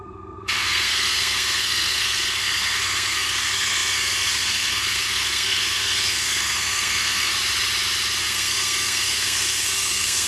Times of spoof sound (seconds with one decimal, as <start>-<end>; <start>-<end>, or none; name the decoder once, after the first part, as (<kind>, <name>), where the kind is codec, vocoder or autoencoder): 0.0-7.3 (codec, SNAC); 8.2-10.3